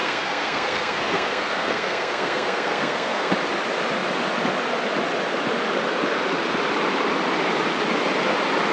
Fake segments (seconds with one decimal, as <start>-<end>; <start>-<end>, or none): 0.0-3.3